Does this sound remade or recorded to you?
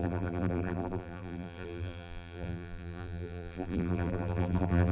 remade